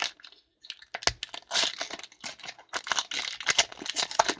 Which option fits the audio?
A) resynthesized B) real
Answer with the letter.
B